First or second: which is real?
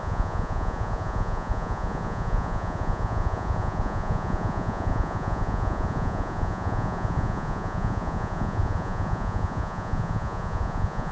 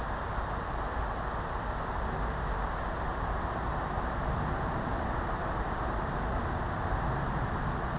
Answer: second